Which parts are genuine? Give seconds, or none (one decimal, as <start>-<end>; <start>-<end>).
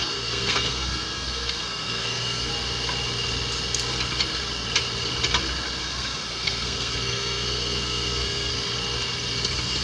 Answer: 2.5-5.8; 8.5-9.8